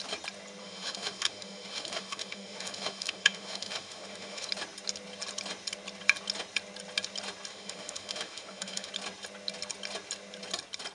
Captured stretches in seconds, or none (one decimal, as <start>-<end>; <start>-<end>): 0.0-0.6; 4.5-7.5; 8.9-10.9